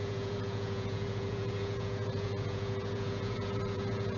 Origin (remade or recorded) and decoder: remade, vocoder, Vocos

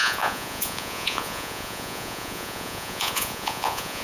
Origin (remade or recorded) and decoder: remade, vocoder, Vocos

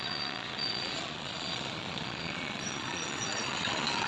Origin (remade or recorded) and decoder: remade, vocoder, Vocos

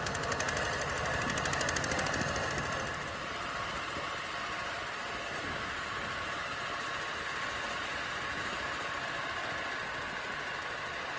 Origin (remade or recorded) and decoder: recorded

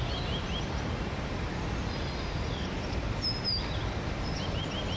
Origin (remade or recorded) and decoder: recorded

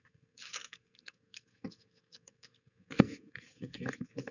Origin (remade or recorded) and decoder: remade, codec, SNAC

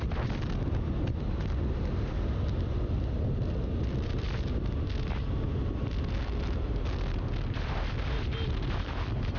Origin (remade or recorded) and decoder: recorded